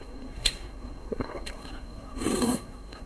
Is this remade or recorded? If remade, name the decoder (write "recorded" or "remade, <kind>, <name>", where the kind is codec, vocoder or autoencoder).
remade, codec, SNAC